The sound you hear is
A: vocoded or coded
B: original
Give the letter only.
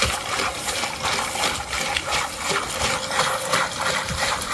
B